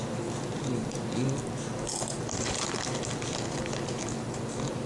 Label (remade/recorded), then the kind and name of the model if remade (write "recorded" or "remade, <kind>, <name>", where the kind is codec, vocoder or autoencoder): recorded